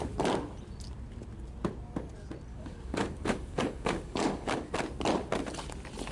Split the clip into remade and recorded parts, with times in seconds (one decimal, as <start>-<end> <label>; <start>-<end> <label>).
0.0-2.5 recorded; 2.5-4.7 remade; 4.7-6.1 recorded